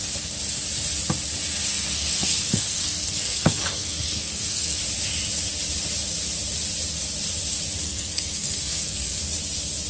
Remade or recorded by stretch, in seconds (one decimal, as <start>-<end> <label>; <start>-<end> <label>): 0.0-1.7 recorded; 1.7-4.8 remade; 4.8-7.8 recorded; 7.8-9.2 remade; 9.2-9.9 recorded